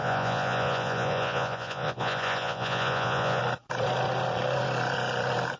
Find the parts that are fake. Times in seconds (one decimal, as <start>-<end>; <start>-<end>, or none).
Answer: 0.0-3.4